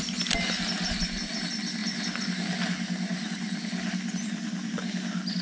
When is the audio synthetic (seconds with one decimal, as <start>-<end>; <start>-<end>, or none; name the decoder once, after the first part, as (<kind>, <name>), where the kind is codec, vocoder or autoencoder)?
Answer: none